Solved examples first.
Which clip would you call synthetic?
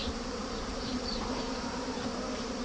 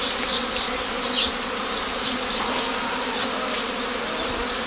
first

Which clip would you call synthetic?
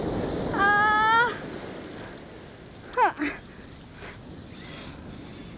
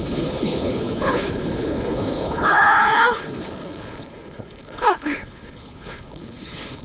second